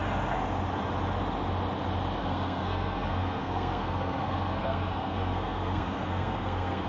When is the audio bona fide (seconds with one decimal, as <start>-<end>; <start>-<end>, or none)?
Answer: 0.0-2.2

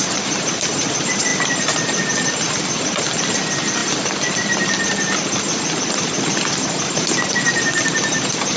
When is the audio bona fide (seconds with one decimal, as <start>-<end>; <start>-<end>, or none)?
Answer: 0.0-8.6

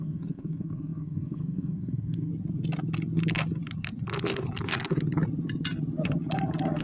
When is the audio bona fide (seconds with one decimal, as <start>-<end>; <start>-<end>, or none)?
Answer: 2.3-6.8

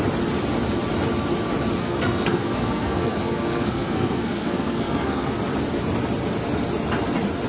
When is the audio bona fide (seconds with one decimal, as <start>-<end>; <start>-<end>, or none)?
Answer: 0.0-1.8; 5.3-7.5